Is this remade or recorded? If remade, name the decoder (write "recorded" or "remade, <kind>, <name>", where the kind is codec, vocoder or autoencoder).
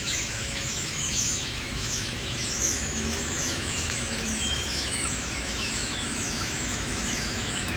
remade, autoencoder, DAC-VAE